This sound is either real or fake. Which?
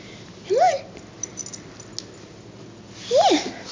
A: real